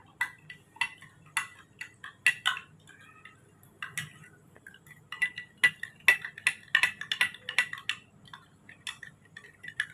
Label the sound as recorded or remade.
recorded